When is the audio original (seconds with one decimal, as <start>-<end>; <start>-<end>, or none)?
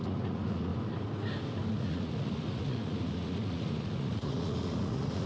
0.7-1.7